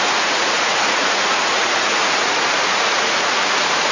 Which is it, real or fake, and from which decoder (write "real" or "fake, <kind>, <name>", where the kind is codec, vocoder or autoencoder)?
fake, vocoder, Vocos